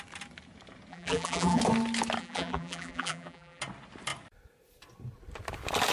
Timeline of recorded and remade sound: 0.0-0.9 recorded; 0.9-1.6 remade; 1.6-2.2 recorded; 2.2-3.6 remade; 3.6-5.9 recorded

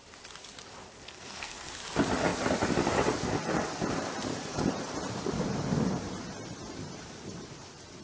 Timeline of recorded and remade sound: 0.0-0.9 recorded; 0.9-1.7 remade; 1.7-8.0 recorded

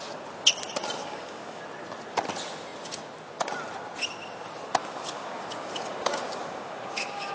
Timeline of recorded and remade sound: 0.0-1.0 recorded; 1.0-1.6 remade; 1.6-4.8 recorded; 4.8-7.3 remade

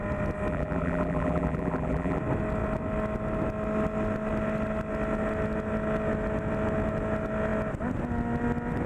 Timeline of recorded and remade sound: 0.0-0.5 recorded; 0.5-2.2 remade; 2.2-8.9 recorded